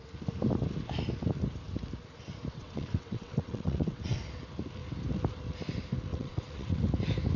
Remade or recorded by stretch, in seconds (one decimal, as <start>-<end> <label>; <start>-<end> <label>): 0.0-2.5 recorded; 2.5-4.2 remade; 4.2-6.1 recorded; 6.1-6.8 remade; 6.8-7.4 recorded